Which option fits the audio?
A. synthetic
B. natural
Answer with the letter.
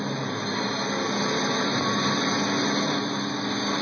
B